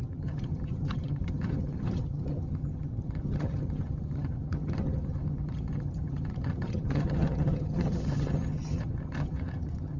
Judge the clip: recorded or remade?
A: remade